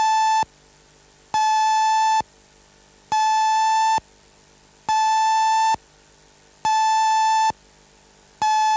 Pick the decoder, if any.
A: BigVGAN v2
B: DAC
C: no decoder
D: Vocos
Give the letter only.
C